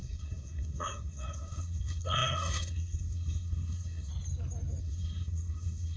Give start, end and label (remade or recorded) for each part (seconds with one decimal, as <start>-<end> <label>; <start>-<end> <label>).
0.0-4.1 remade; 4.1-4.8 recorded; 4.8-6.0 remade